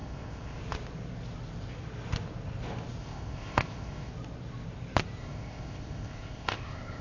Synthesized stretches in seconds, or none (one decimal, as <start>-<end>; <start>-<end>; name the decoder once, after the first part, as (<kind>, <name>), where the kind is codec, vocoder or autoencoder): 0.0-0.6 (codec, ZipCodec); 3.0-4.1; 5.2-7.0